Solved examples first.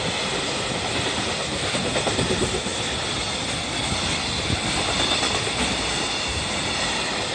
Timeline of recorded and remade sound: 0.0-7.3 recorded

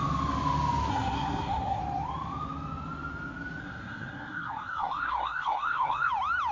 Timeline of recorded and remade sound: 0.0-0.9 recorded; 0.9-1.8 remade; 1.8-3.6 recorded; 3.6-6.1 remade; 6.1-6.5 recorded

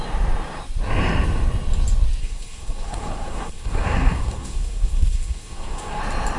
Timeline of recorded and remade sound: 0.0-2.2 recorded; 2.2-6.0 remade; 6.0-6.4 recorded